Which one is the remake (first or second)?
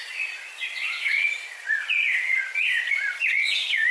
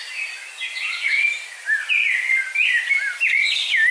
first